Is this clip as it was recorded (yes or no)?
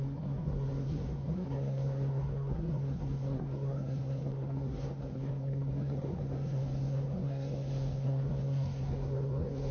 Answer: no